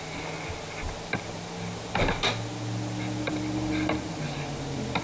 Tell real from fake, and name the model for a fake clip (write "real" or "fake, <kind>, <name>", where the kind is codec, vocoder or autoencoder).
real